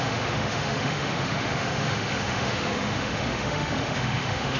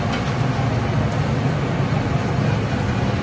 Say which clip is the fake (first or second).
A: first